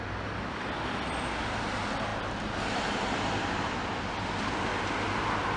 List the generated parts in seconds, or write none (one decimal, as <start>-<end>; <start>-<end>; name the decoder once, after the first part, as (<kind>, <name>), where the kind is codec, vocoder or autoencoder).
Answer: none